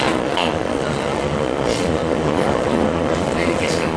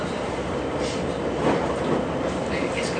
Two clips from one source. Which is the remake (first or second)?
first